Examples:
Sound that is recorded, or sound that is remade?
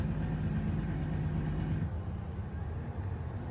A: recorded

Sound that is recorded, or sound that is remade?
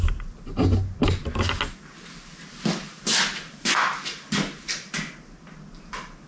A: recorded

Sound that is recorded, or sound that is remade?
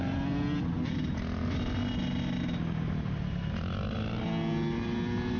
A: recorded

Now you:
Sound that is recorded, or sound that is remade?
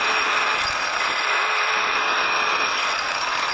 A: recorded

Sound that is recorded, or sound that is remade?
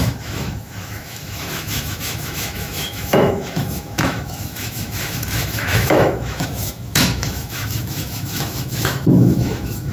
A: remade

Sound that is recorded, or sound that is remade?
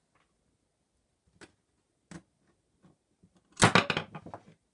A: recorded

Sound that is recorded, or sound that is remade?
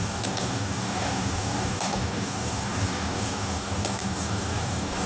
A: remade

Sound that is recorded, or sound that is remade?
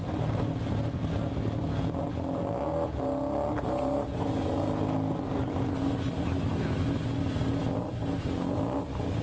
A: recorded